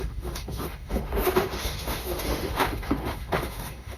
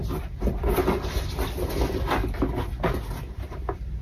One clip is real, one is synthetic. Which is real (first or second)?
second